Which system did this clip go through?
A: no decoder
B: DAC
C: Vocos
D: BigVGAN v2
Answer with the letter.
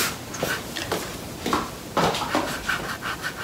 A